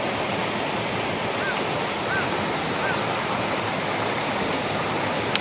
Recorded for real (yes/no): yes